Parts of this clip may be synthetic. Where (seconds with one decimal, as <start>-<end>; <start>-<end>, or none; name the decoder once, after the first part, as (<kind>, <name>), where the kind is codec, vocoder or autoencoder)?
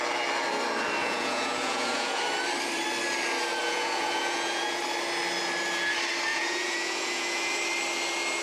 1.0-2.2 (vocoder, Vocos); 3.6-4.8; 6.3-7.6